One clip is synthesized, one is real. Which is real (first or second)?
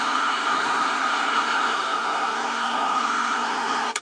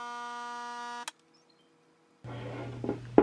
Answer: second